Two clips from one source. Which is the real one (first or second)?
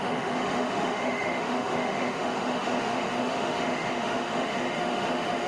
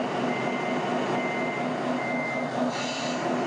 second